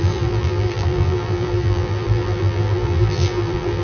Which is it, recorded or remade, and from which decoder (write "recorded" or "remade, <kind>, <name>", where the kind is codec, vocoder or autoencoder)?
remade, vocoder, BigVGAN v2